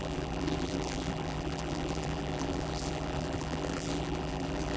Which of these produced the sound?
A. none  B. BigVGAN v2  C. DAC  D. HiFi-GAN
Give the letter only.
B